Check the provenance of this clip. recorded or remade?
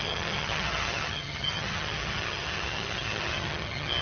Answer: remade